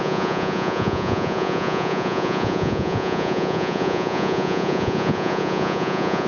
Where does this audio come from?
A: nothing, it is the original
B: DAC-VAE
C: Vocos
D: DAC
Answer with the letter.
C